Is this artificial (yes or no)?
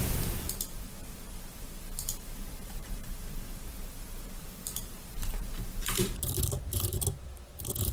yes